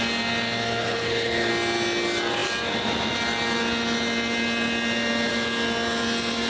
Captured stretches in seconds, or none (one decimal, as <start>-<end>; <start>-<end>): 0.0-0.8; 1.5-6.5